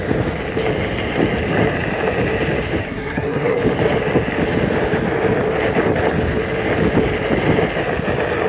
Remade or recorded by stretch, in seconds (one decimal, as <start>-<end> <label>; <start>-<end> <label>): 0.0-2.8 recorded; 2.8-3.6 remade; 3.6-8.5 recorded